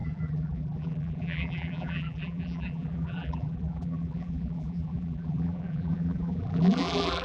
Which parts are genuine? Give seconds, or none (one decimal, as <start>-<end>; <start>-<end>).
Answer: none